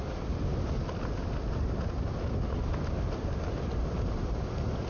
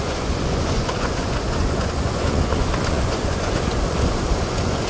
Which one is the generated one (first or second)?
second